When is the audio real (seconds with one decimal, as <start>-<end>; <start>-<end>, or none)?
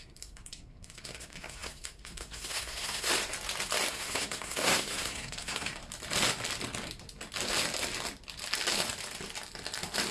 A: 3.1-3.9; 5.8-10.1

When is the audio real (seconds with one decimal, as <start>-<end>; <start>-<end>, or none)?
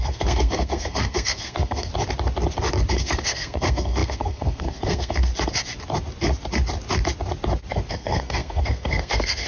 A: 1.9-2.9; 5.3-7.9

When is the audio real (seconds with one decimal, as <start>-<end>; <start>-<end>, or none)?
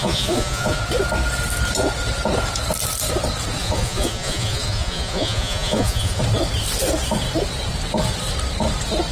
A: 0.8-3.6; 6.2-9.1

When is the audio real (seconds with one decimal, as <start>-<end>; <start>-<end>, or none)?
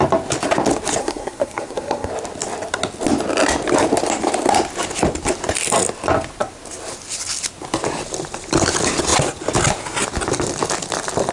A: 0.0-1.0; 2.1-11.3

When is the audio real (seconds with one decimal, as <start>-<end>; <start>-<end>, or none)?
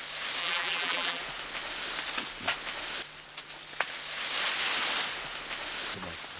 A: 0.0-0.4; 1.2-6.4